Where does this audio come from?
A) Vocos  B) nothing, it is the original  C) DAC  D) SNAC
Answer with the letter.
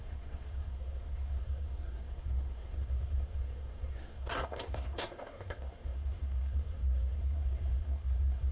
D